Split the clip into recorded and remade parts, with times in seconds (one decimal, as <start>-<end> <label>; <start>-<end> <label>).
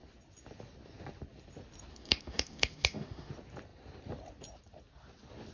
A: 0.0-1.9 recorded; 1.9-3.3 remade; 3.3-5.5 recorded